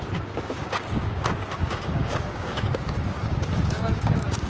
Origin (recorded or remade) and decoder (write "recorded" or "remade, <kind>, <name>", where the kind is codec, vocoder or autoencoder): remade, codec, DAC